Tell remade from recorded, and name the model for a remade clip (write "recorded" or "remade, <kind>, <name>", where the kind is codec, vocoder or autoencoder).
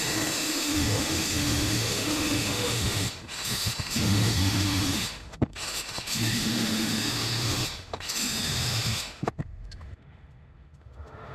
remade, autoencoder, DAC-VAE